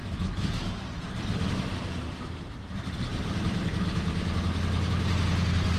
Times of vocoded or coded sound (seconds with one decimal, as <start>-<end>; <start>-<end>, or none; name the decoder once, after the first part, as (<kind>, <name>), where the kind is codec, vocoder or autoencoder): 0.0-0.7 (autoencoder, DAC-VAE)